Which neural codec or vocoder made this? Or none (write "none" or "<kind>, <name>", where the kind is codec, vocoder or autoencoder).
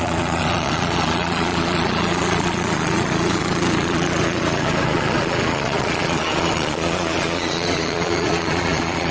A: vocoder, Vocos